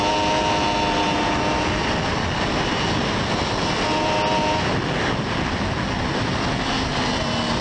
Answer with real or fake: real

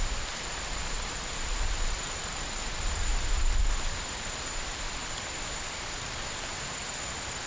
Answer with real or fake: real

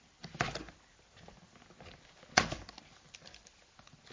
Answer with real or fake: real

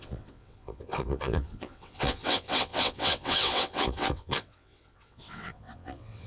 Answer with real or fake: fake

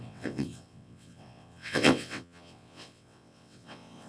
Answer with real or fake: fake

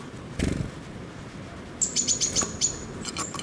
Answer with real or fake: real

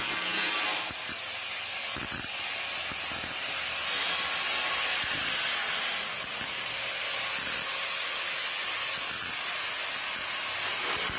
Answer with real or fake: real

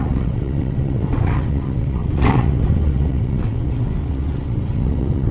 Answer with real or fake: fake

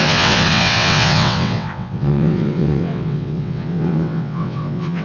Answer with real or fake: fake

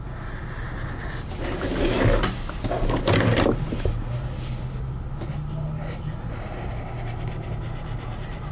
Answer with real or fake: real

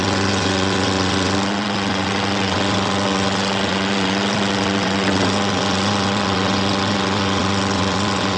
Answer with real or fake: fake